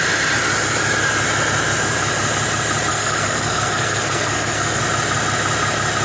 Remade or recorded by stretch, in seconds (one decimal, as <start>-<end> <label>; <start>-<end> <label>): 0.0-2.9 recorded; 2.9-4.8 remade; 4.8-6.0 recorded